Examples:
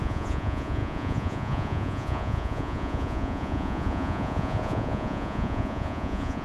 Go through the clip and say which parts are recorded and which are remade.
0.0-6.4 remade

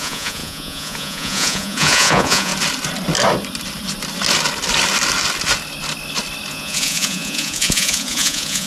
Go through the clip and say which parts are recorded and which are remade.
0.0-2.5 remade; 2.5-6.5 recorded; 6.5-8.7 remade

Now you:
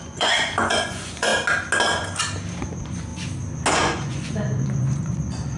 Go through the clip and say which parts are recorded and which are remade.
0.0-1.3 remade; 1.3-2.6 recorded; 2.6-3.1 remade; 3.1-3.7 recorded; 3.7-5.6 remade

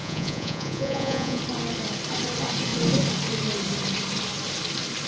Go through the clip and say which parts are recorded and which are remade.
0.0-1.4 remade; 1.4-5.1 recorded